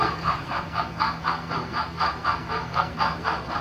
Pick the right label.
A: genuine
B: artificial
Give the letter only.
B